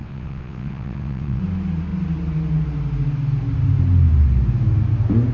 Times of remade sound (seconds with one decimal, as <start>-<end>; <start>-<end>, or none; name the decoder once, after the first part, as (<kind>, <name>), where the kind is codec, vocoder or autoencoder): 0.0-1.4 (vocoder, WaveNeXt)